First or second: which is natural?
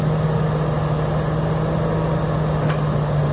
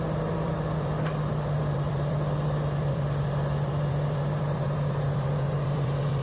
first